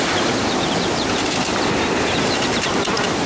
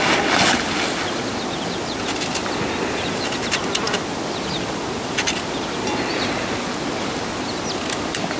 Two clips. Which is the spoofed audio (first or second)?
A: first